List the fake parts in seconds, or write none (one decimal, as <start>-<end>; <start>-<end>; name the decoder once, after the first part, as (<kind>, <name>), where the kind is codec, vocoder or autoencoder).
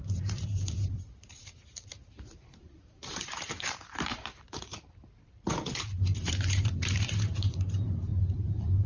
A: 0.0-8.9 (vocoder, BigVGAN v2)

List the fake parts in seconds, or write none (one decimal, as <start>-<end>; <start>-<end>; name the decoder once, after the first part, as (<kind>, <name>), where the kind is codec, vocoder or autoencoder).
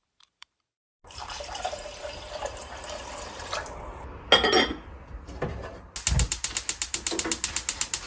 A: 0.0-3.1 (vocoder, BigVGAN v2)